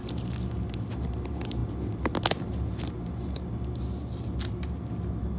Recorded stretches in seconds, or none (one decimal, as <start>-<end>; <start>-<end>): 0.0-5.4